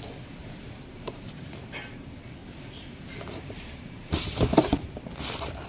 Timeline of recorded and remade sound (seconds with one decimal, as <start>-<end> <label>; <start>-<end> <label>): 0.0-0.4 recorded; 0.4-1.3 remade; 1.3-2.4 recorded; 2.4-4.5 remade; 4.5-5.7 recorded